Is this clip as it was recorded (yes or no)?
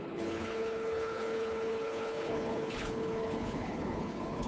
no